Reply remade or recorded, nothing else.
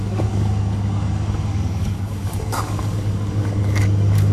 remade